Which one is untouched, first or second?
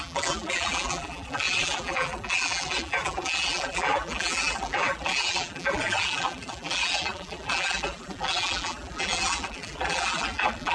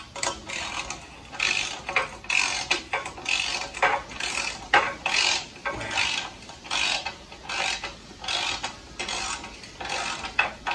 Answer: second